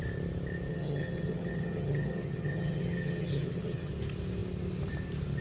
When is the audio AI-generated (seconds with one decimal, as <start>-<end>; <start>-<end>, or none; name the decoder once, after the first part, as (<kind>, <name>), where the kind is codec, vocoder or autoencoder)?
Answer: 0.7-3.9 (vocoder, HiFi-GAN)